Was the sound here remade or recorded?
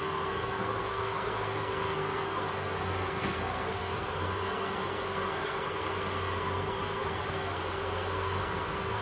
remade